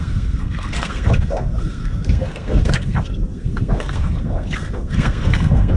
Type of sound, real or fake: fake